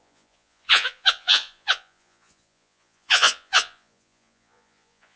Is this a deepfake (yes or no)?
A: yes